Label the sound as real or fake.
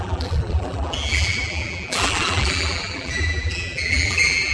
fake